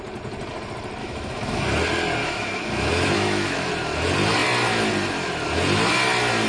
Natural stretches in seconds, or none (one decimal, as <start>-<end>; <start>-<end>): 0.0-1.0; 1.6-2.2; 3.7-6.5